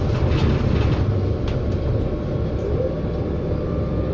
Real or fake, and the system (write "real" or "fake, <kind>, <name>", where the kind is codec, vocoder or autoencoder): real